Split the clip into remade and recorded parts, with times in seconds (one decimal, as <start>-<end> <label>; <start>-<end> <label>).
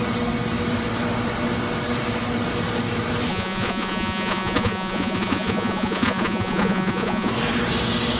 0.0-3.3 recorded; 3.3-7.3 remade; 7.3-8.2 recorded